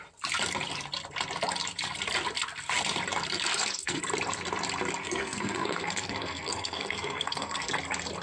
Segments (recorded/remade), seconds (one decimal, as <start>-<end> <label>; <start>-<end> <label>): 0.0-3.5 recorded; 3.5-4.0 remade; 4.0-5.0 recorded; 5.0-7.7 remade; 7.7-8.2 recorded